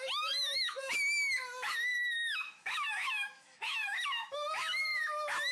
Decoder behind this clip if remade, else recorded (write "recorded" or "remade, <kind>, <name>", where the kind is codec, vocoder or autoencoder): remade, autoencoder, DAC-VAE